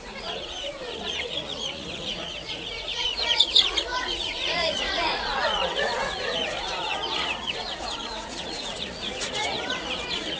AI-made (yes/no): yes